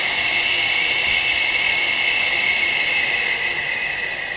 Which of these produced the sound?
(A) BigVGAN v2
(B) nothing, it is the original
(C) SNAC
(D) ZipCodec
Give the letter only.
B